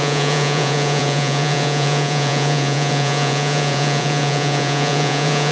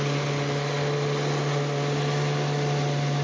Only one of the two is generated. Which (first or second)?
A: first